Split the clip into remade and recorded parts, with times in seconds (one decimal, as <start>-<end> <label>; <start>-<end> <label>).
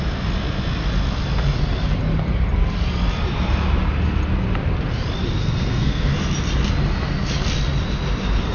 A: 0.0-5.4 recorded; 5.4-6.1 remade; 6.1-8.5 recorded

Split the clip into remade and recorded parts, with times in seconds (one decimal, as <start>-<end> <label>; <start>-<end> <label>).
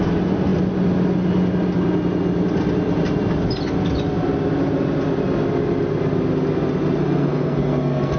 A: 0.0-7.0 recorded; 7.0-8.2 remade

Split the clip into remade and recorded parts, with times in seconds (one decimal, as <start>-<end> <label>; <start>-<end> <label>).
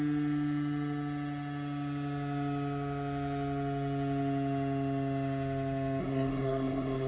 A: 0.0-6.0 recorded; 6.0-7.1 remade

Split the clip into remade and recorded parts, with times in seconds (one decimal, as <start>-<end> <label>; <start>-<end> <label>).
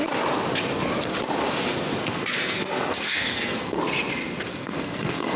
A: 0.0-2.0 recorded; 2.0-3.8 remade; 3.8-4.5 recorded; 4.5-5.4 remade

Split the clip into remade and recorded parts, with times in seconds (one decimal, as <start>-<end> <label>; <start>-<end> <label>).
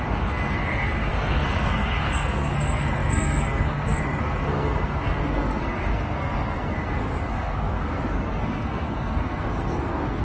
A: 0.0-10.2 remade